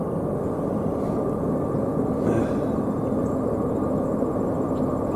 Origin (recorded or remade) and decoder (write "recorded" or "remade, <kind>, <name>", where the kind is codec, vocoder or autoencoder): recorded